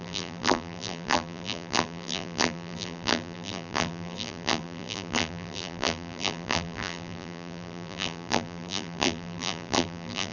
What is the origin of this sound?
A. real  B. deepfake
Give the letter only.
B